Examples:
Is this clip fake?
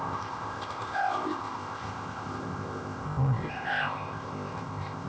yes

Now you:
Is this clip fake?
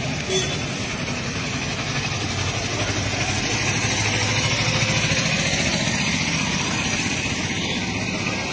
no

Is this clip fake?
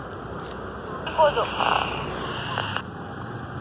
no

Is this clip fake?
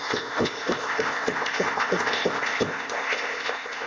yes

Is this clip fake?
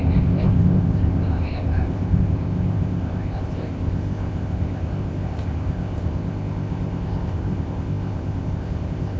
yes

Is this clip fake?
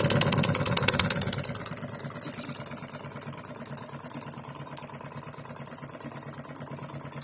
no